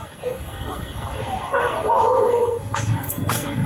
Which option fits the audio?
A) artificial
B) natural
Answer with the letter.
A